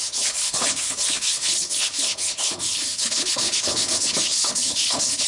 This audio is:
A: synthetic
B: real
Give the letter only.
A